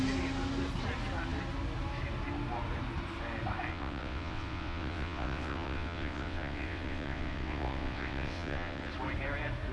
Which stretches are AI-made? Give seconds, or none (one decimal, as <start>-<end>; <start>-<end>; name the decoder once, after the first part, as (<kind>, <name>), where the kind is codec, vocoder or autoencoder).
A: 3.7-8.9 (vocoder, WaveNeXt)